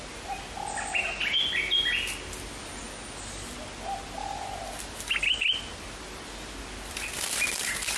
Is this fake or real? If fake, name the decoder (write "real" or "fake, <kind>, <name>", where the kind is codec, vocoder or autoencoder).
real